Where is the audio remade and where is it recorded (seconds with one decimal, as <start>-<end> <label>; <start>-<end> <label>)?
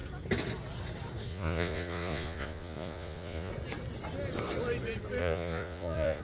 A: 0.0-1.3 recorded; 1.3-3.5 remade; 3.5-5.2 recorded; 5.2-6.2 remade